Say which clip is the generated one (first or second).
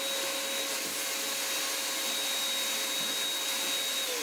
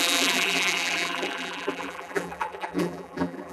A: second